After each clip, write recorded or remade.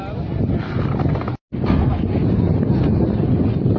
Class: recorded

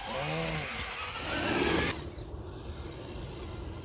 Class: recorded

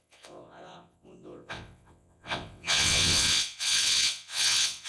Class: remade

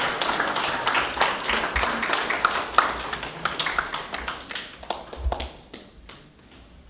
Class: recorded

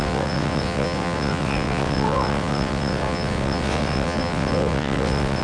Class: remade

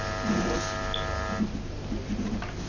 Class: recorded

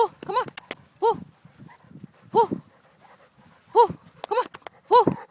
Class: recorded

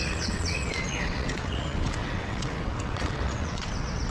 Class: remade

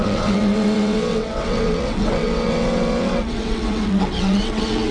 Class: remade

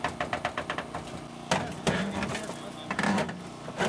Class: recorded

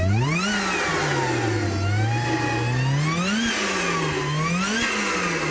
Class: recorded